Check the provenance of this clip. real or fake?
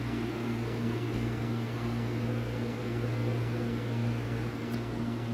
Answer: fake